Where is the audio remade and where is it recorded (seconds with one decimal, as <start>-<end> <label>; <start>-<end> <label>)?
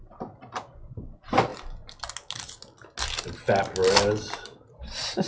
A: 0.0-5.3 recorded